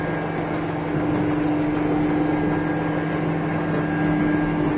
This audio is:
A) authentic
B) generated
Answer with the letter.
A